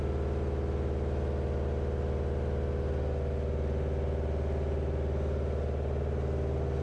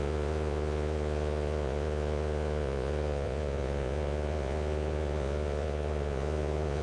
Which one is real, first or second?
first